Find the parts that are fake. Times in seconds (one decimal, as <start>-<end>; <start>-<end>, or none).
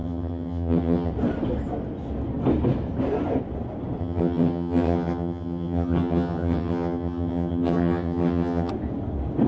0.0-1.1; 4.0-8.7